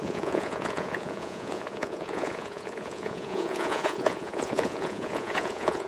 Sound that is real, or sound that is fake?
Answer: fake